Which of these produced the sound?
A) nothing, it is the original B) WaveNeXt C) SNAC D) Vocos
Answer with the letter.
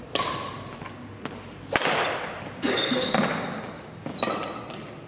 A